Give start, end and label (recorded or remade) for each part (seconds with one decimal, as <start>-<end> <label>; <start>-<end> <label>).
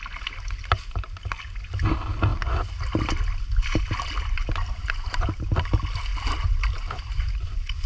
0.0-6.1 recorded; 6.1-7.9 remade